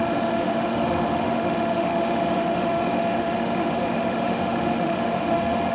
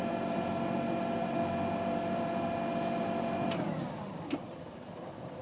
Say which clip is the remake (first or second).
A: first